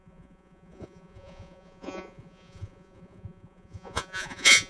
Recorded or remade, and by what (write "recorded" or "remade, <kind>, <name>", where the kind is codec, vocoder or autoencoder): remade, vocoder, Vocos